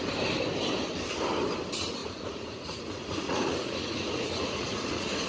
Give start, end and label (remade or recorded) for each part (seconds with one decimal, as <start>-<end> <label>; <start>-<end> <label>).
0.0-2.0 recorded; 2.0-5.3 remade